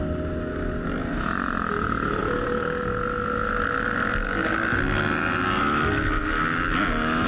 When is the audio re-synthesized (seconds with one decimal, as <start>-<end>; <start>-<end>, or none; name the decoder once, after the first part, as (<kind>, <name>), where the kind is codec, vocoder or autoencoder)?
2.2-2.8 (vocoder, BigVGAN v2)